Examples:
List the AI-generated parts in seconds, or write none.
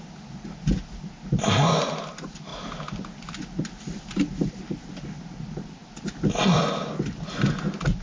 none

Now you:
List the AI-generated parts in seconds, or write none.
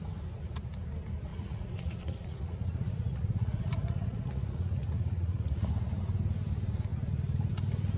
1.3-5.7 (vocoder, Vocos)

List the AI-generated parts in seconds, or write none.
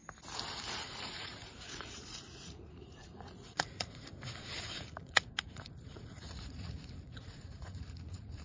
0.8-8.4 (vocoder, Vocos)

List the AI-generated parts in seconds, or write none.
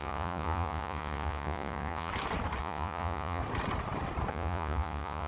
0.0-2.1 (vocoder, Vocos); 2.6-3.4; 4.3-5.3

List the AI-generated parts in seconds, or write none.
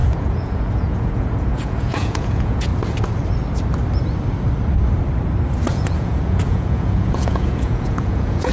0.0-2.7 (vocoder, Vocos); 5.7-8.5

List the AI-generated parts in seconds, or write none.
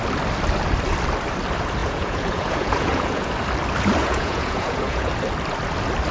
1.8-3.3 (vocoder, Vocos); 4.0-5.1